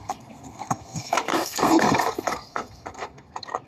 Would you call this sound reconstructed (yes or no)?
yes